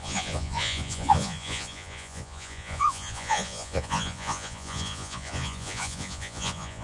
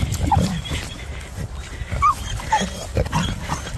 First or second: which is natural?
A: second